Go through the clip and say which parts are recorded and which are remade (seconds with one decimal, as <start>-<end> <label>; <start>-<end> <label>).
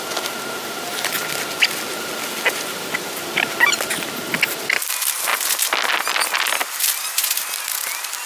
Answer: 0.0-8.3 recorded